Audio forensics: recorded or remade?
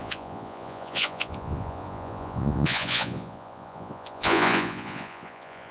remade